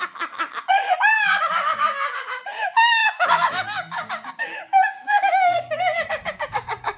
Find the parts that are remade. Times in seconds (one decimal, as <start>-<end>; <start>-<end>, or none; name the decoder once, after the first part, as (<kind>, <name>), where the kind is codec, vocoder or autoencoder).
0.0-7.0 (codec, DAC)